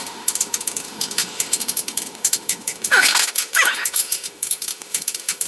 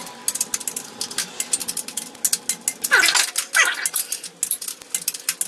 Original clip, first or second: second